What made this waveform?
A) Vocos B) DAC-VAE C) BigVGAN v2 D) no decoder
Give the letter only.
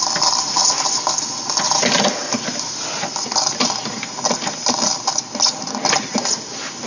D